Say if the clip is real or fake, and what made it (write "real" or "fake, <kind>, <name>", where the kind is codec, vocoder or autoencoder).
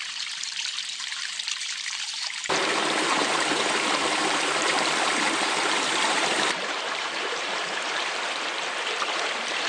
fake, vocoder, BigVGAN v2